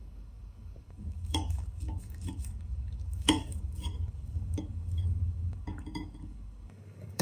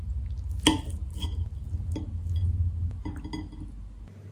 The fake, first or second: first